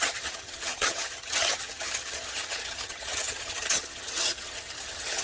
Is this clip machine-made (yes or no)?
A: yes